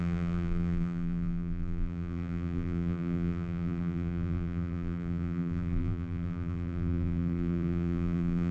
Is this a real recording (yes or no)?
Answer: no